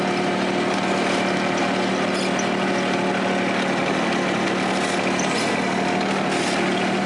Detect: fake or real real